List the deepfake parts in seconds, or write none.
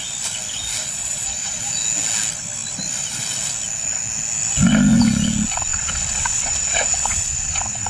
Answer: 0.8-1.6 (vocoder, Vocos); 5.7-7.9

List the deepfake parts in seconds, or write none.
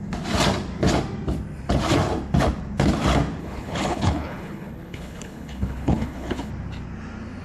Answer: 3.4-6.5 (codec, HILCodec)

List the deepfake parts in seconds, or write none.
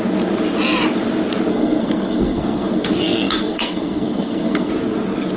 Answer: 1.5-4.7 (codec, SNAC)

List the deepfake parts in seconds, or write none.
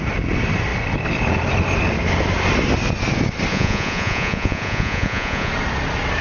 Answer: 3.5-5.5 (vocoder, Vocos)